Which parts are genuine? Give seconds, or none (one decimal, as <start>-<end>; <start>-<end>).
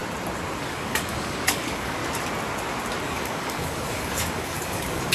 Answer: 0.0-0.6; 2.0-3.0